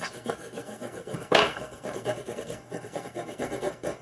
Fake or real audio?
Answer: fake